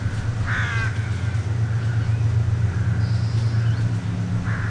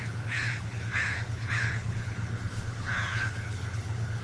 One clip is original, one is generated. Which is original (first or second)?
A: first